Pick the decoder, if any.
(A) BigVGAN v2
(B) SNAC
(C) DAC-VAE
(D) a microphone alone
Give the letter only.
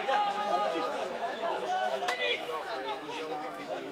C